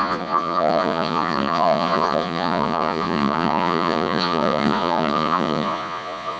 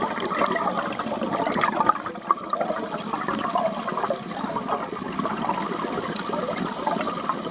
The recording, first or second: second